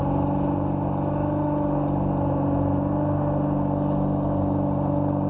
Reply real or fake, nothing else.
real